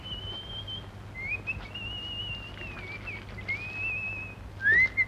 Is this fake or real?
real